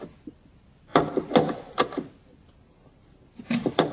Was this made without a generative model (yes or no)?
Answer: yes